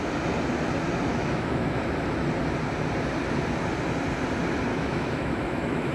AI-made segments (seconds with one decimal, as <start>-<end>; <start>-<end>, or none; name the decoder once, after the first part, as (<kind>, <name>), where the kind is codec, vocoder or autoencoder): 1.1-1.8 (autoencoder, DAC-VAE); 4.7-5.9